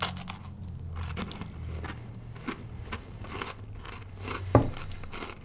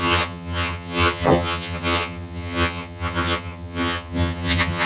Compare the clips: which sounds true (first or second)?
first